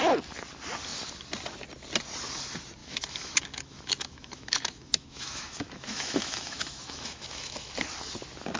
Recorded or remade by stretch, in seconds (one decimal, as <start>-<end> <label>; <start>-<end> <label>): 0.0-2.8 recorded; 2.8-7.7 remade; 7.7-8.6 recorded